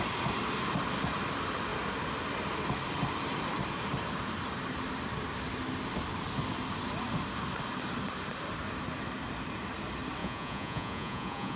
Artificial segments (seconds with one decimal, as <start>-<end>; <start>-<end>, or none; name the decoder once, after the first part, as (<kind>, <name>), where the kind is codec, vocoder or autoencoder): 10.2-11.6 (vocoder, Vocos)